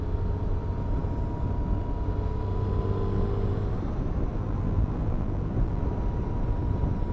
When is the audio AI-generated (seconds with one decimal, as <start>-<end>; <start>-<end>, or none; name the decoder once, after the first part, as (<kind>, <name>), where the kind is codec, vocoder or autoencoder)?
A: 4.3-5.8 (vocoder, BigVGAN v2)